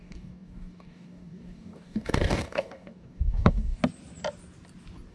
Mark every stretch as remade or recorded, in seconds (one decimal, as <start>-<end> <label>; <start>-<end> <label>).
0.0-3.8 remade; 3.8-5.1 recorded